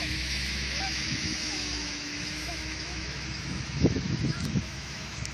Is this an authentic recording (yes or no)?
no